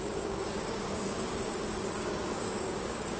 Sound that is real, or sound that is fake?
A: fake